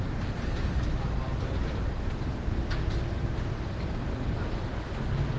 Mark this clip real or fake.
real